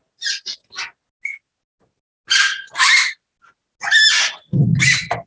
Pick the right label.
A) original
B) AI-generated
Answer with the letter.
A